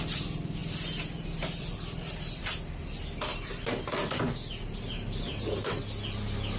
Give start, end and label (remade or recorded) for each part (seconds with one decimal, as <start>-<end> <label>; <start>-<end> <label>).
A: 0.0-6.6 recorded